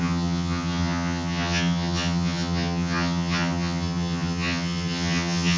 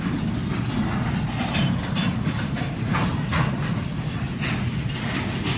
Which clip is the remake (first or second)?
first